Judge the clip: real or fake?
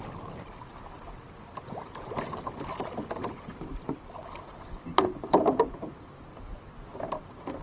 real